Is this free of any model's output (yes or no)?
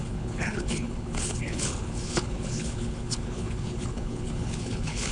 no